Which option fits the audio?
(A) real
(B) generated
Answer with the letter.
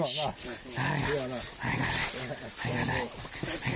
A